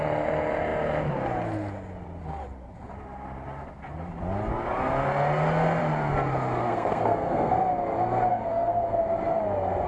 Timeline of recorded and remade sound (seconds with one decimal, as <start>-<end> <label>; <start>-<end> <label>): 0.0-6.6 recorded; 6.6-7.6 remade; 7.6-8.3 recorded; 8.3-9.0 remade; 9.0-9.9 recorded